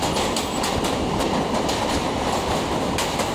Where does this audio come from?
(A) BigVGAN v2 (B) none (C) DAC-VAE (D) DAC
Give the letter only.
B